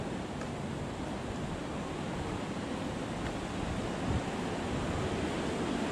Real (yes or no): yes